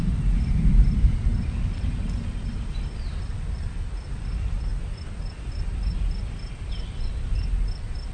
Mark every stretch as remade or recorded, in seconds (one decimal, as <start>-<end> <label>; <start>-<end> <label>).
0.0-8.1 recorded